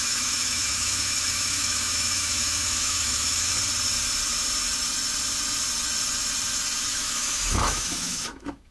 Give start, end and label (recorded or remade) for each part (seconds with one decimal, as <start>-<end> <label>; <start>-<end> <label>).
0.0-3.5 remade; 3.5-6.9 recorded; 6.9-8.7 remade